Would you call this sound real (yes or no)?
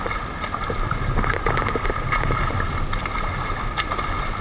yes